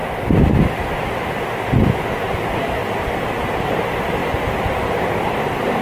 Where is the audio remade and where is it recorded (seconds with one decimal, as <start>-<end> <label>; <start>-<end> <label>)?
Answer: 0.0-2.8 recorded; 2.8-3.8 remade; 3.8-5.8 recorded

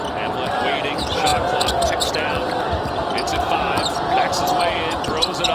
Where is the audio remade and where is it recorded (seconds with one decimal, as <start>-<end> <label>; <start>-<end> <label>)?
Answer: 0.0-5.5 recorded

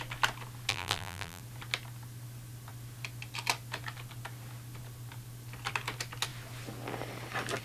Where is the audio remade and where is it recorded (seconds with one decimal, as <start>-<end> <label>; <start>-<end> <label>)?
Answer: 0.0-0.7 recorded; 0.7-1.4 remade; 1.4-7.6 recorded

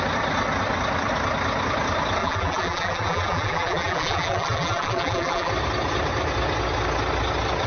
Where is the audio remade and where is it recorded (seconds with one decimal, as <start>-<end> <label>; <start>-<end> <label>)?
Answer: 0.0-2.2 recorded; 2.2-5.5 remade; 5.5-7.7 recorded

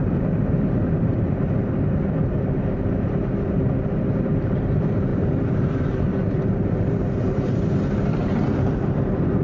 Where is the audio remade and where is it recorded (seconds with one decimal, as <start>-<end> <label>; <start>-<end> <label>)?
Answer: 0.0-9.4 remade

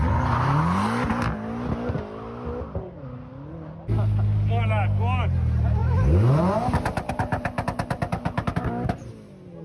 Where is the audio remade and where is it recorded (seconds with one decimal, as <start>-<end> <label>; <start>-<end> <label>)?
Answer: 0.0-9.6 recorded

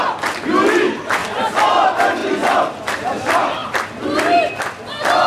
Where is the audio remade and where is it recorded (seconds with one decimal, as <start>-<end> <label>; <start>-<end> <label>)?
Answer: 0.0-1.2 recorded; 1.2-1.7 remade; 1.7-2.2 recorded; 2.2-2.9 remade; 2.9-3.6 recorded; 3.6-4.5 remade; 4.5-5.3 recorded

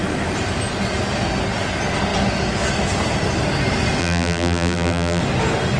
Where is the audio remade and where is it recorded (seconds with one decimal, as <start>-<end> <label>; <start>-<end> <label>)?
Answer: 0.0-4.0 recorded; 4.0-5.2 remade; 5.2-5.8 recorded